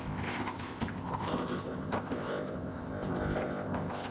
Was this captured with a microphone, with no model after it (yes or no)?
no